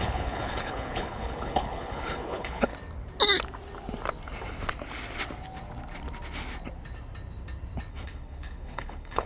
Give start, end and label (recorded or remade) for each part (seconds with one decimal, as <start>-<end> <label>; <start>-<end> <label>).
0.0-2.7 remade; 2.7-7.9 recorded; 7.9-9.3 remade